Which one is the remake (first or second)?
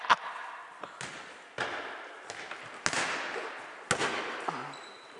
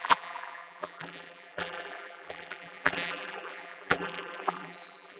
second